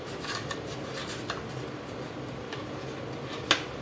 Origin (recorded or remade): recorded